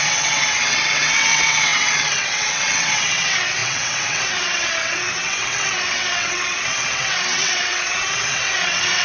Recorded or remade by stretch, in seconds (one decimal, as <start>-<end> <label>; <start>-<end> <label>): 0.0-9.0 remade